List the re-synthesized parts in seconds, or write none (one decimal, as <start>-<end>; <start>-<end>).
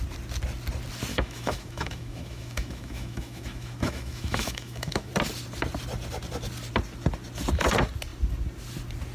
1.1-5.1